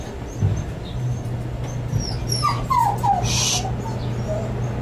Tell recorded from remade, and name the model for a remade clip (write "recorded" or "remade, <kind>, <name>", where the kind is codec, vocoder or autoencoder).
recorded